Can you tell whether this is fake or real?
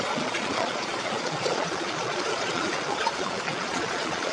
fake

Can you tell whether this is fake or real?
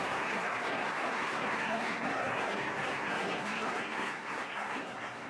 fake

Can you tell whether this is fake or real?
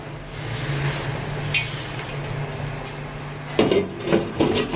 real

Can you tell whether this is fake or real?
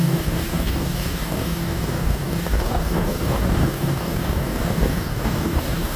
fake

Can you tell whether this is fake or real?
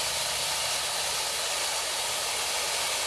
real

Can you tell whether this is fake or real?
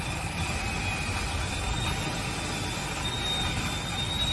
real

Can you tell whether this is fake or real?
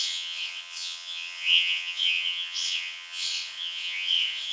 fake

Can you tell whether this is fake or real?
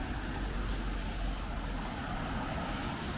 real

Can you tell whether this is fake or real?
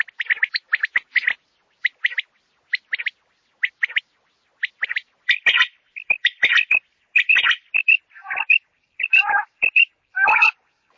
real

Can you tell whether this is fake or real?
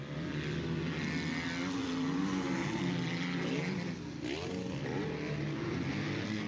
real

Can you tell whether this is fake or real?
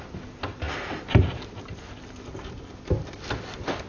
real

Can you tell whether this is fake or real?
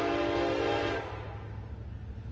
real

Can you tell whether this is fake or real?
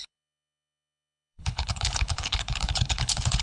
fake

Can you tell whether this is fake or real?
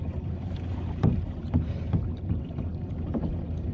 fake